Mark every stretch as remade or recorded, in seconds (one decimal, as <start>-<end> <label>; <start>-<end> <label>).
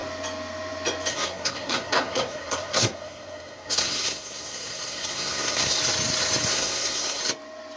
0.0-1.1 recorded; 1.1-5.8 remade; 5.8-6.5 recorded; 6.5-7.2 remade; 7.2-7.8 recorded